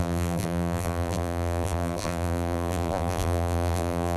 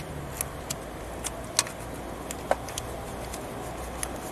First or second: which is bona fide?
second